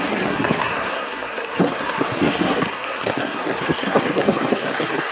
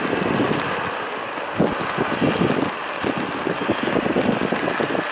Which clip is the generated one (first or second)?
first